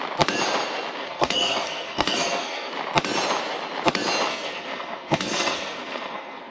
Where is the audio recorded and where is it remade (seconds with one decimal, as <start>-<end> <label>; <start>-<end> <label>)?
0.0-1.0 recorded; 1.0-2.7 remade; 2.7-4.3 recorded; 4.3-6.5 remade